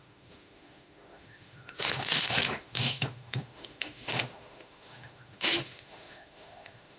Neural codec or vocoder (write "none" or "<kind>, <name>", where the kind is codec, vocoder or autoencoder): autoencoder, DAC-VAE